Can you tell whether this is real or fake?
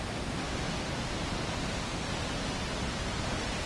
real